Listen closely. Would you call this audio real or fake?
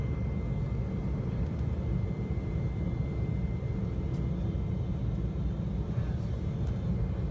real